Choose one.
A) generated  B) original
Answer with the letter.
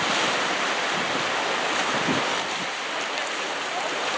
B